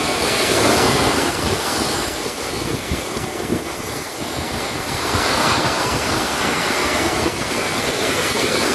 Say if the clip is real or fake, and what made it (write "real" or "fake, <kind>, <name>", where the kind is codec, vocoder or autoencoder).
fake, codec, SNAC